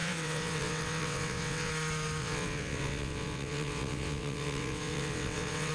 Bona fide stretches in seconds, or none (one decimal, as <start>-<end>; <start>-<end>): 1.7-2.2